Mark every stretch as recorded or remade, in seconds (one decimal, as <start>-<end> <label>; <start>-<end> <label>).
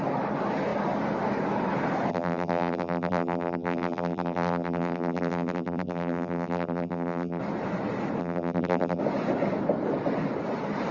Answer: 0.0-2.1 recorded; 2.1-7.4 remade; 7.4-8.2 recorded; 8.2-9.0 remade; 9.0-10.9 recorded